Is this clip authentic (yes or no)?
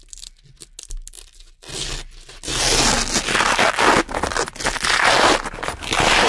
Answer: yes